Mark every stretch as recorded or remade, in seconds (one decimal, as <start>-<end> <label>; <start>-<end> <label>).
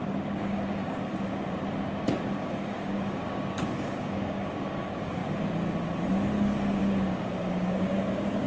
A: 0.0-1.3 remade; 1.3-2.3 recorded; 2.3-5.2 remade; 5.2-6.8 recorded; 6.8-8.5 remade